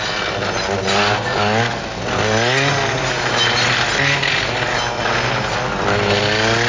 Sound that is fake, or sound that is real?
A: real